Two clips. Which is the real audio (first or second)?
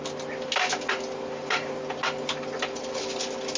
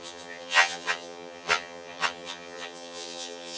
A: first